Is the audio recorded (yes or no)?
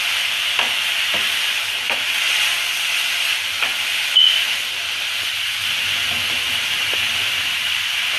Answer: yes